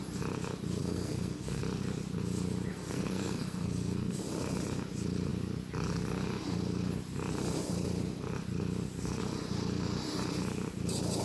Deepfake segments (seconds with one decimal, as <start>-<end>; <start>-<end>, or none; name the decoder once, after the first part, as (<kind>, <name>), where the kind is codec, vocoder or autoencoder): 0.8-1.6 (codec, SNAC); 2.7-4.2

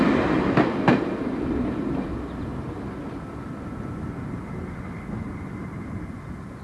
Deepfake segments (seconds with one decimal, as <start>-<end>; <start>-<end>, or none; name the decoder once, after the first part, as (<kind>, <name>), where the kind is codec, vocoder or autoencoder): none

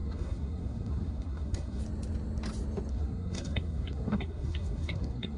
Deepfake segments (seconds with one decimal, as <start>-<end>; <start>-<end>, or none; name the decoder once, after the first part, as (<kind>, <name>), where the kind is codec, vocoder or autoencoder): 0.0-1.8 (codec, SNAC); 2.9-5.4

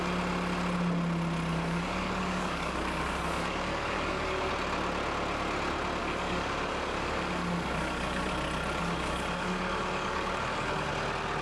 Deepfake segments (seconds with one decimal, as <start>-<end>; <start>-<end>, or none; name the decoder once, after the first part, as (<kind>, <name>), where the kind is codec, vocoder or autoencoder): 1.5-4.5 (codec, DAC); 6.0-8.3; 8.8-10.9

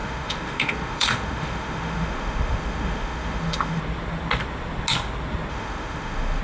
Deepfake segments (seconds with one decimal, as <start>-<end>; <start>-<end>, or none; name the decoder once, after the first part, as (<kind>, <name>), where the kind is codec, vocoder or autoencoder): 0.0-3.8 (autoencoder, DAC-VAE); 5.5-6.4

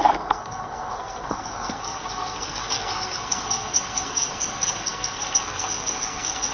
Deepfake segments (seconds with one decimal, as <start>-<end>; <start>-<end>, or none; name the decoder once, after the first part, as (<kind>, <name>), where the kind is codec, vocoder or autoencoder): 0.0-6.5 (codec, SNAC)

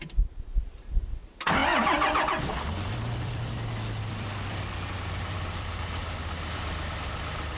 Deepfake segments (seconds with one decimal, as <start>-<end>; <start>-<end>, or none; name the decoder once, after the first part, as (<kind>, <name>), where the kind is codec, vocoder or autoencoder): 1.6-5.8 (vocoder, BigVGAN v2)